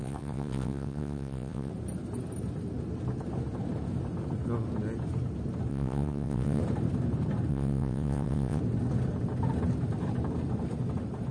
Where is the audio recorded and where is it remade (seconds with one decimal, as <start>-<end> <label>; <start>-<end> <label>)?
0.0-1.7 remade; 1.7-5.7 recorded; 5.7-6.6 remade; 6.6-7.5 recorded; 7.5-8.6 remade; 8.6-11.3 recorded